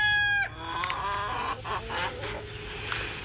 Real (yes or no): yes